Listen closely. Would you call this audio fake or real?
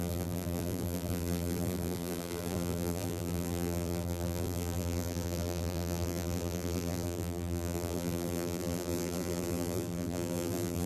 fake